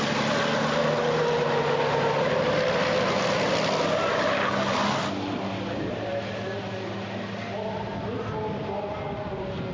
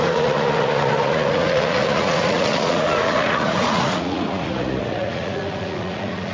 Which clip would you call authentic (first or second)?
first